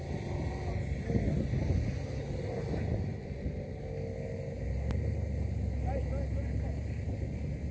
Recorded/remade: recorded